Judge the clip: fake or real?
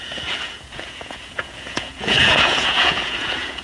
fake